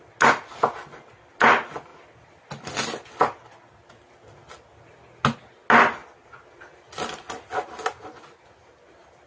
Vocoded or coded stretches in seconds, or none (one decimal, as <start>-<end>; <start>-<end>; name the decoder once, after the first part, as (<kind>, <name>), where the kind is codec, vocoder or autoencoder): none